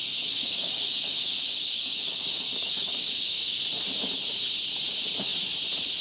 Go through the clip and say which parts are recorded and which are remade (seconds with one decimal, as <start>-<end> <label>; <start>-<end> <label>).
0.0-3.6 remade; 3.6-6.0 recorded